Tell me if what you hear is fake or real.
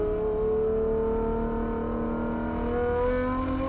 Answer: real